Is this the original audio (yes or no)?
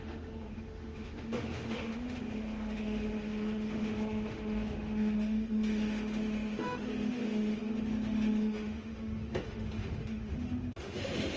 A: no